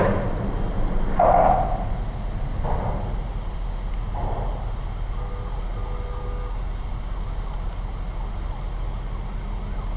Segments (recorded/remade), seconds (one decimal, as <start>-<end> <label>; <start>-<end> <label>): 0.0-10.0 recorded